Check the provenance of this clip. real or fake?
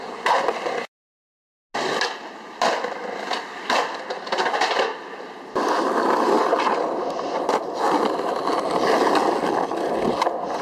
real